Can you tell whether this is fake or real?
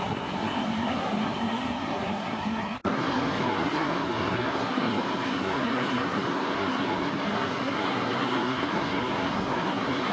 fake